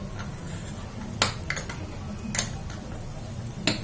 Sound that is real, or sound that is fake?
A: real